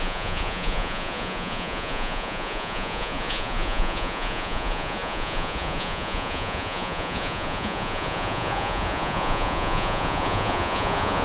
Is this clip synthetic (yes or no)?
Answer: yes